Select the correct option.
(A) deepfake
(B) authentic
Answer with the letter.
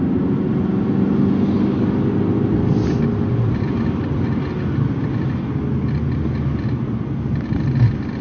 B